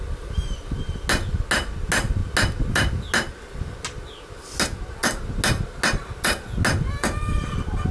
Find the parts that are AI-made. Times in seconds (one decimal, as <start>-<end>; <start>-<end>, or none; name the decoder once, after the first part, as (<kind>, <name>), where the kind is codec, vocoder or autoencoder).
none